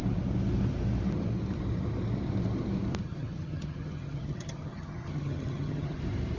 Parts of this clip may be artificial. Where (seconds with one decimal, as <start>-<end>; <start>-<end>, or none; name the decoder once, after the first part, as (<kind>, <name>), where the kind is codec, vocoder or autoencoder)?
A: 3.0-6.0 (vocoder, HiFi-GAN)